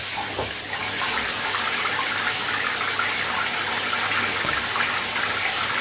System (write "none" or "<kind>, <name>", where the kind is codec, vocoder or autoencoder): none